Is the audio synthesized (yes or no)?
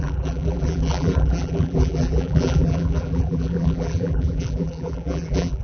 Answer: yes